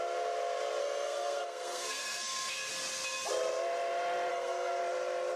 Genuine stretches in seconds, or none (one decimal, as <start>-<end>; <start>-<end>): 0.0-0.8; 2.7-4.3; 4.8-5.4